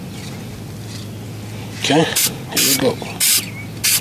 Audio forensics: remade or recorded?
recorded